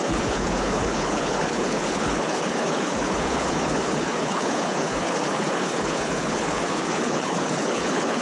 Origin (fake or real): fake